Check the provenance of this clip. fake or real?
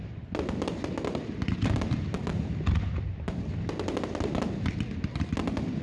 real